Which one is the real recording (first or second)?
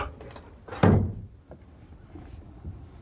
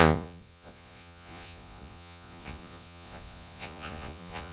first